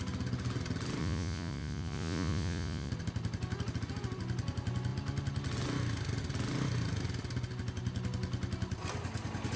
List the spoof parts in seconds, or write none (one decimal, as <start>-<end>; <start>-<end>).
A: 1.0-2.9

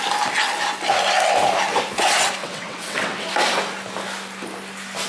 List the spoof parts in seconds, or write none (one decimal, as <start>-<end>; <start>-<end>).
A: 2.4-3.3

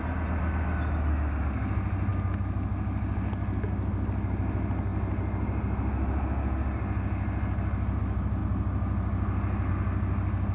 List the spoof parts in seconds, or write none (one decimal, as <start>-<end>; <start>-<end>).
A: none